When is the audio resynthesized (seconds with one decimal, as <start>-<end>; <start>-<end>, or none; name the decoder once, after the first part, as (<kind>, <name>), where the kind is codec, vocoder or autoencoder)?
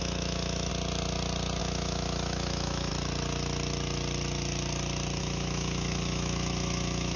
0.0-0.7 (autoencoder, DAC-VAE); 1.6-2.9; 5.2-7.2